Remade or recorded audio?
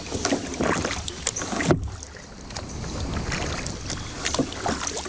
recorded